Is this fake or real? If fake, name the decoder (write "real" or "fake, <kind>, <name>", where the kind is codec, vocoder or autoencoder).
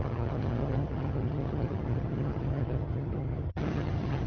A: fake, vocoder, HiFi-GAN